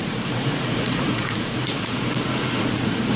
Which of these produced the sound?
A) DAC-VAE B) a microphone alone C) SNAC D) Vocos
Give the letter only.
D